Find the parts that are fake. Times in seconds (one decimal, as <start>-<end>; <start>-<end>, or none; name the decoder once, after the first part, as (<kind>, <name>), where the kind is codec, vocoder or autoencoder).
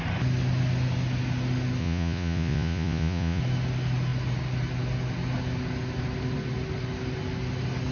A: 1.8-3.4 (vocoder, Vocos)